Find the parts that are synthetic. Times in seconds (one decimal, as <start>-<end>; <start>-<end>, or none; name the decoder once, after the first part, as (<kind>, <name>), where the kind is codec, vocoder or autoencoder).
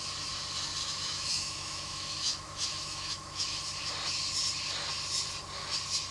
0.8-3.6 (autoencoder, DAC-VAE)